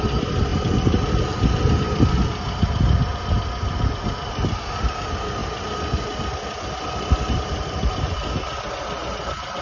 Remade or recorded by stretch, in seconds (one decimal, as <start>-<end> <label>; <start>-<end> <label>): 0.0-9.6 recorded